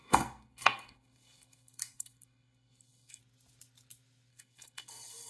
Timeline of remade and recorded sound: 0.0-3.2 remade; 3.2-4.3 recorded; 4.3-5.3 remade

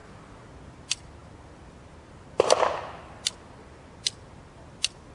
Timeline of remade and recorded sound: 0.0-5.1 recorded

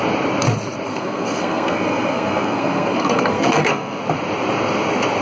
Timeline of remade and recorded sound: 0.0-0.9 recorded; 0.9-4.0 remade; 4.0-5.2 recorded